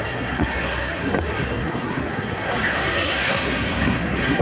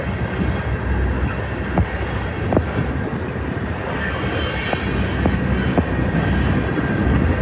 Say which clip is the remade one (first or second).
first